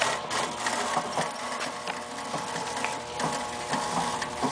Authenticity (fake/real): real